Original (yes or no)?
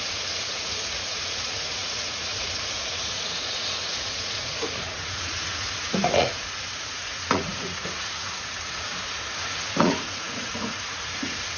no